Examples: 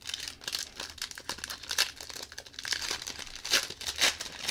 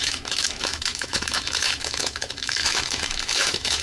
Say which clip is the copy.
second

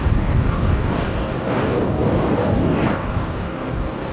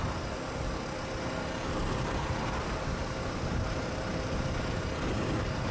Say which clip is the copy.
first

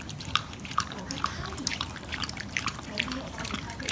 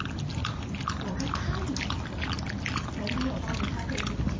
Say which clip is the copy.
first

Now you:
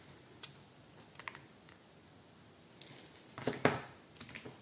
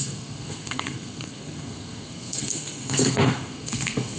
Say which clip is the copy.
second